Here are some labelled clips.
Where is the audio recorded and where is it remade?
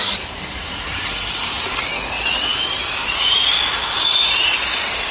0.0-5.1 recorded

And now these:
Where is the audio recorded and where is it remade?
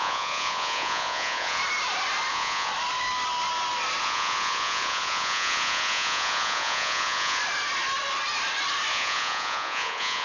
0.0-1.6 remade; 1.6-2.3 recorded; 2.3-2.7 remade; 2.7-4.0 recorded; 4.0-7.4 remade; 7.4-8.9 recorded; 8.9-10.2 remade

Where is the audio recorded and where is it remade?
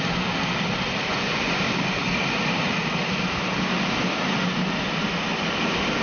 0.0-1.1 recorded; 1.1-1.6 remade; 1.6-6.0 recorded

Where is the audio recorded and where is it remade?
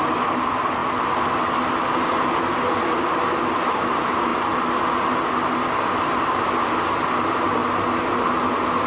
0.0-8.9 recorded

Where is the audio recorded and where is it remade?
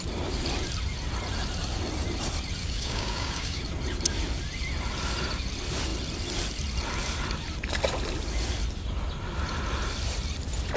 0.0-2.6 recorded; 2.6-3.6 remade; 3.6-10.8 recorded